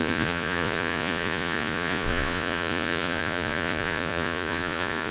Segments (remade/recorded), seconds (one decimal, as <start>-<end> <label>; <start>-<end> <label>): 0.0-5.1 remade